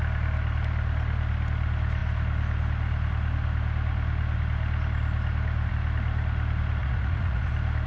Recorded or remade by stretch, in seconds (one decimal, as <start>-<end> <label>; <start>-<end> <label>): 0.0-6.8 recorded; 6.8-7.5 remade; 7.5-7.9 recorded